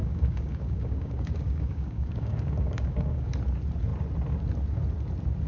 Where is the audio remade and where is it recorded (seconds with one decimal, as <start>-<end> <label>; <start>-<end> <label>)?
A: 0.0-3.3 remade; 3.3-5.5 recorded